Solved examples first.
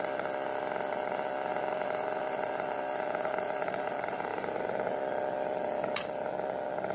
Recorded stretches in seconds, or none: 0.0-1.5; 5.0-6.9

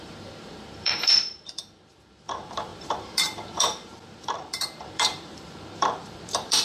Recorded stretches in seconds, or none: none

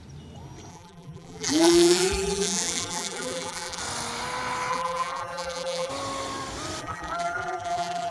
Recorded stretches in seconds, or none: 0.0-0.7; 3.8-4.7; 5.9-6.8

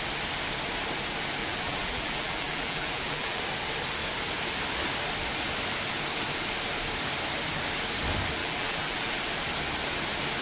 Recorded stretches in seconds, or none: 0.0-1.4; 3.4-8.4; 9.1-10.4